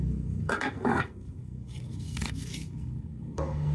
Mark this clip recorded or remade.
remade